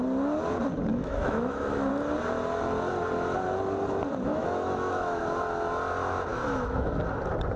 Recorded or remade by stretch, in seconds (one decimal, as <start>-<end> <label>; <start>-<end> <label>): 0.0-0.9 recorded; 0.9-1.9 remade; 1.9-4.3 recorded; 4.3-5.2 remade; 5.2-6.3 recorded; 6.3-6.9 remade; 6.9-7.6 recorded